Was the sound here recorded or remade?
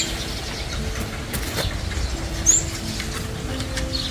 recorded